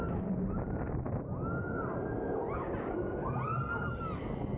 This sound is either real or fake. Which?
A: real